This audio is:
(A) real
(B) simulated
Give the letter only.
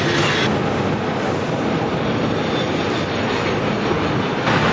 A